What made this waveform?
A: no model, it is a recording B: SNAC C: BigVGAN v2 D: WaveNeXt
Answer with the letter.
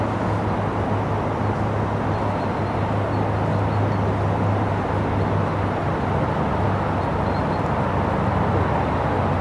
A